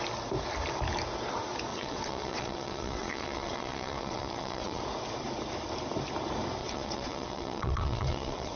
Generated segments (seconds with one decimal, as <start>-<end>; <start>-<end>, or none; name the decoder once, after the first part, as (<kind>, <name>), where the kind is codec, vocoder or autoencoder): 1.7-4.8 (vocoder, WaveNeXt); 6.6-8.6

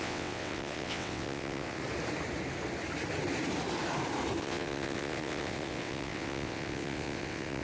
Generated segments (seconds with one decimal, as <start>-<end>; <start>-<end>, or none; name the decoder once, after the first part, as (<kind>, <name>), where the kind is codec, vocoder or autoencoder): 0.0-1.8 (vocoder, WaveNeXt); 4.4-7.6

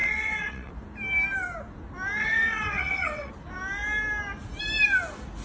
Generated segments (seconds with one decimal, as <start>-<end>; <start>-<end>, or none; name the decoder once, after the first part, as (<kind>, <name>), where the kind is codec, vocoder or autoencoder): 0.0-0.7 (vocoder, WaveNeXt); 2.2-3.3

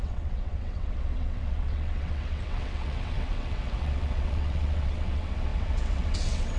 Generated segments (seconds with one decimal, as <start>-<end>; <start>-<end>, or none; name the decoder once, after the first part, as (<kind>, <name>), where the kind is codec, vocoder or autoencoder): 0.0-6.6 (vocoder, WaveNeXt)

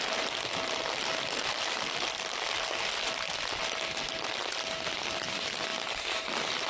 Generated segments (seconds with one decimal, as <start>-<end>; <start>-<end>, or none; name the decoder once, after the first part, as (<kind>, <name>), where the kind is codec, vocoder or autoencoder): none

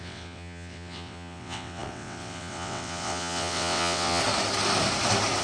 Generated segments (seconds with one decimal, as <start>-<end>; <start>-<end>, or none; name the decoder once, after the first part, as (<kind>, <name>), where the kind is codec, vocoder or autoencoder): 0.0-4.2 (vocoder, WaveNeXt)